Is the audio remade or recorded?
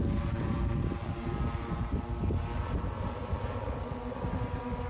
recorded